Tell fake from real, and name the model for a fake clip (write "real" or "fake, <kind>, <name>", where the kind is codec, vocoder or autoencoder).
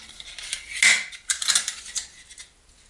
real